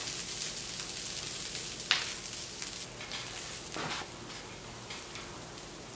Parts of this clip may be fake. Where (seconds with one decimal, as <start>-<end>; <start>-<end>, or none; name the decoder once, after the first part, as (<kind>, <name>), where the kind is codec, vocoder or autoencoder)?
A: none